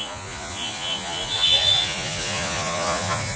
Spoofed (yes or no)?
yes